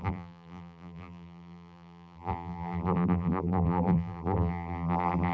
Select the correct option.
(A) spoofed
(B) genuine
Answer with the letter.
A